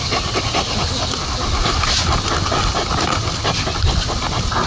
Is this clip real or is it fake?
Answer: real